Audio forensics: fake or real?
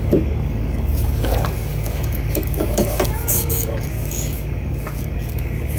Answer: fake